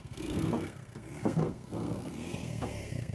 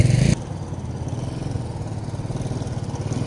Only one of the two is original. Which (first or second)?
second